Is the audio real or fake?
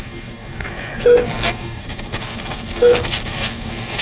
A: fake